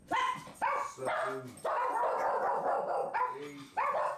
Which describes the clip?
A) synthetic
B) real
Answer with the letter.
B